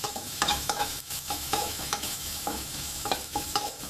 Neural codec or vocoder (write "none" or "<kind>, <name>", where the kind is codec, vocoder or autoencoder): autoencoder, DAC-VAE